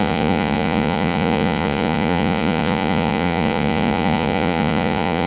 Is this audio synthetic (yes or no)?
yes